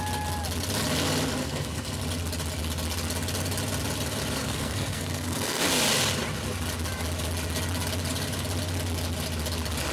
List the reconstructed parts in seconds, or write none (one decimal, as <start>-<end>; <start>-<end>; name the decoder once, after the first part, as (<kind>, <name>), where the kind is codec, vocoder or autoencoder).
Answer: 1.4-2.0 (codec, SNAC); 4.4-5.6